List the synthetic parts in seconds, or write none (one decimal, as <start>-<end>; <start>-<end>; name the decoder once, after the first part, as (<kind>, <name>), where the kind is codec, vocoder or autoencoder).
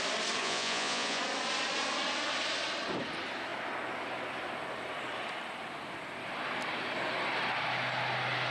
0.4-1.2 (vocoder, Vocos)